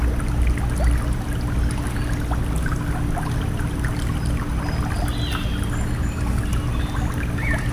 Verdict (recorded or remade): recorded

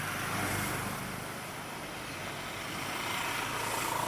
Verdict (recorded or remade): recorded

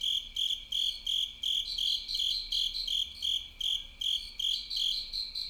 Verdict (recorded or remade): recorded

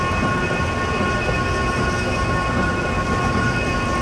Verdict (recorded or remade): recorded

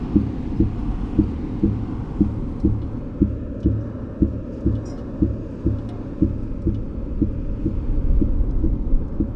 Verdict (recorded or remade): recorded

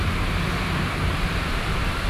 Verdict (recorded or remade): remade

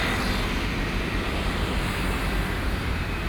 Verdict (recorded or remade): remade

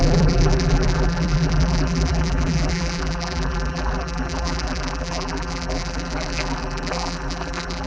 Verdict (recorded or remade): remade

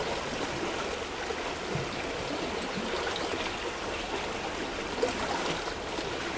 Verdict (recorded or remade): recorded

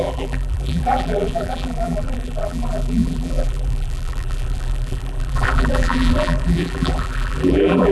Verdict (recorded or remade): remade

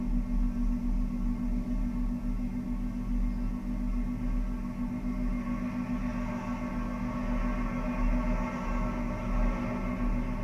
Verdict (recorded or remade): recorded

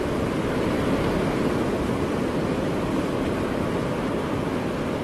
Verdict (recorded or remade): remade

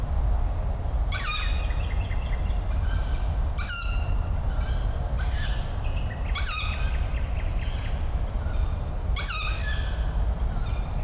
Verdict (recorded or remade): recorded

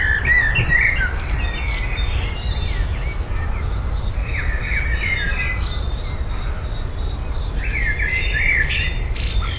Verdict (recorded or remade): recorded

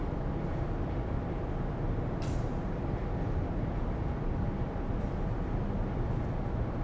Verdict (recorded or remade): recorded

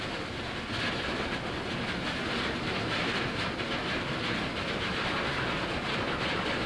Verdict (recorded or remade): recorded